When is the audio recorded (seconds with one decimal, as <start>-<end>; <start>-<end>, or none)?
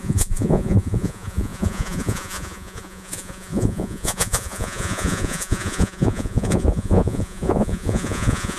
none